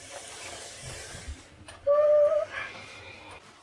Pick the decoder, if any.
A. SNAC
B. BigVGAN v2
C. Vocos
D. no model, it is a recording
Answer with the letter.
D